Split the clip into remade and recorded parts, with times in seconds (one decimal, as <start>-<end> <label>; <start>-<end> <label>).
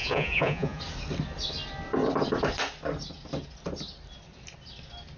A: 0.0-0.8 remade; 0.8-5.2 recorded